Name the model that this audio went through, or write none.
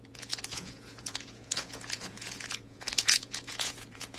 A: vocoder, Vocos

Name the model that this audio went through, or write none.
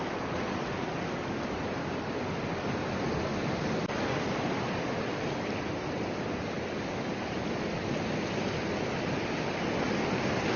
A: none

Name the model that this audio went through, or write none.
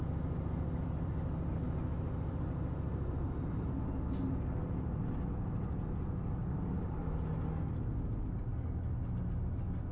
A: none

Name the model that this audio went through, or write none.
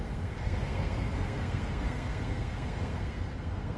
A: codec, SNAC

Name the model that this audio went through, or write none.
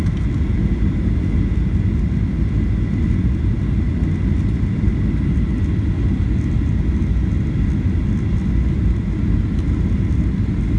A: none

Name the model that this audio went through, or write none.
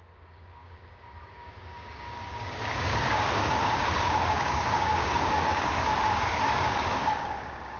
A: codec, DAC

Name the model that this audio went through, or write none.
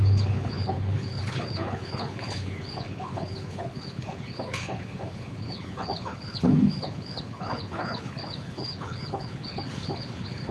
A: codec, HILCodec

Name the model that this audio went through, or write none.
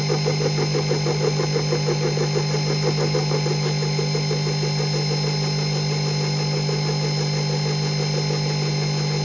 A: none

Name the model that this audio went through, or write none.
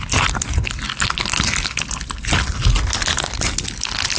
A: none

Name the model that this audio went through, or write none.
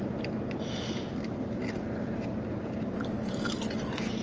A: none